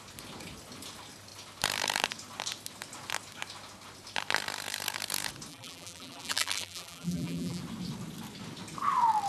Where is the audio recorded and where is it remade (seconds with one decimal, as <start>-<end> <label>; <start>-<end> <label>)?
0.0-5.5 recorded; 5.5-7.6 remade; 7.6-9.3 recorded